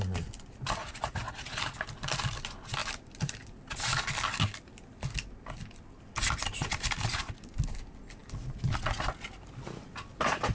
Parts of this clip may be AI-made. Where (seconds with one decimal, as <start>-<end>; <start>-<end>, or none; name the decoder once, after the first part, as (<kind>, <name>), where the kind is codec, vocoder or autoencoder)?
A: 0.8-1.6 (vocoder, Vocos)